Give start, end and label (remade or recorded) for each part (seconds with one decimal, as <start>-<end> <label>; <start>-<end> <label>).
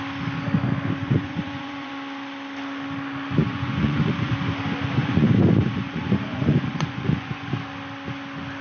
0.0-1.0 recorded; 1.0-1.9 remade; 1.9-3.4 recorded; 3.4-4.3 remade; 4.3-5.0 recorded; 5.0-7.5 remade; 7.5-8.6 recorded